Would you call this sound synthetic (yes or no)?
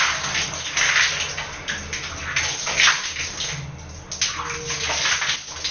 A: no